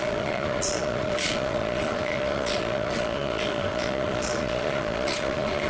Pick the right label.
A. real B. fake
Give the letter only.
B